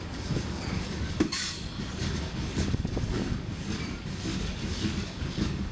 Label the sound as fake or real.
fake